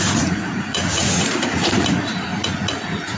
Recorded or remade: remade